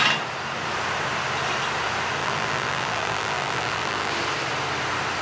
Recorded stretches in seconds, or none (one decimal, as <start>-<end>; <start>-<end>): 0.0-2.2; 4.1-5.2